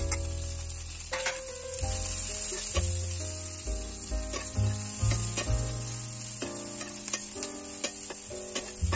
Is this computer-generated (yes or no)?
no